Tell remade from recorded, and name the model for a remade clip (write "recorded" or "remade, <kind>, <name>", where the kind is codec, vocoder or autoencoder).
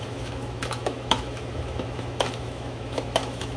remade, autoencoder, DAC-VAE